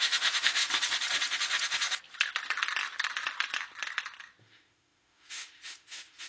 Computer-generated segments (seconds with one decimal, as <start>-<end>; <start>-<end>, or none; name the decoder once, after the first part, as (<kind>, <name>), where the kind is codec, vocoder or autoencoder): 0.0-0.6 (autoencoder, DAC-VAE); 4.4-6.3